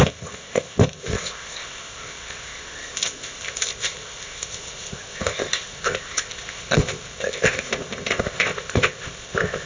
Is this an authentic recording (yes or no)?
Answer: no